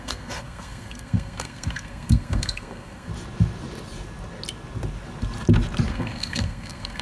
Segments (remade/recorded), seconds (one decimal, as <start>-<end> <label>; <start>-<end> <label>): 0.0-3.1 remade; 3.1-5.9 recorded; 5.9-7.0 remade